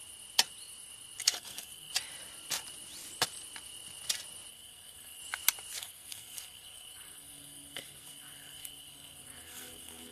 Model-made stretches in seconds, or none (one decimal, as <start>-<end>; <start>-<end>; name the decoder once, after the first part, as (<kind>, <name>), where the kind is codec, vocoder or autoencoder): 1.2-1.9 (codec, SNAC); 4.5-5.2; 5.8-10.1